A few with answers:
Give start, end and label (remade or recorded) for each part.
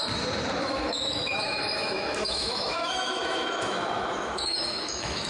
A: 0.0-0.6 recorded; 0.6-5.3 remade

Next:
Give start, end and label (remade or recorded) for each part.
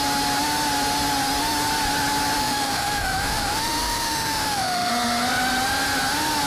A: 0.0-2.4 recorded; 2.4-4.9 remade; 4.9-6.5 recorded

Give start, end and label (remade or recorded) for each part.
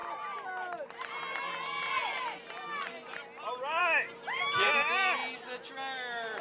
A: 0.0-6.4 recorded